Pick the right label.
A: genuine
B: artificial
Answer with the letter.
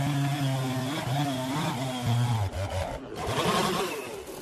A